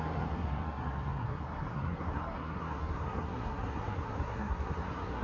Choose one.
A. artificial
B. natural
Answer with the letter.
A